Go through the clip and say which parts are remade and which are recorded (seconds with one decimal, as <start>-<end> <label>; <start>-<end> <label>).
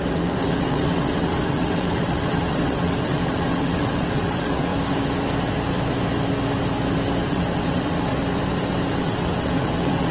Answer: 0.0-4.7 remade; 4.7-7.3 recorded; 7.3-8.2 remade; 8.2-9.0 recorded; 9.0-10.1 remade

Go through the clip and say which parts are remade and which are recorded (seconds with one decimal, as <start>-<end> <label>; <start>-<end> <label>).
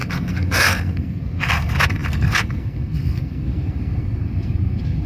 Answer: 0.0-5.1 remade